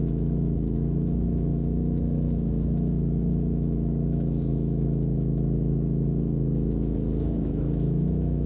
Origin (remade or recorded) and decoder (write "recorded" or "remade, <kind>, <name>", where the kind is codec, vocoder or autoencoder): remade, autoencoder, DAC-VAE